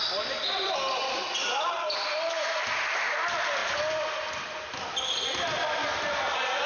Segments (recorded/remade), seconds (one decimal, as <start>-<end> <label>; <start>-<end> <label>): 0.0-6.7 recorded